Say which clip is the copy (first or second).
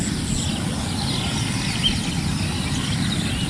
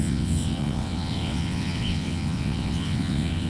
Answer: second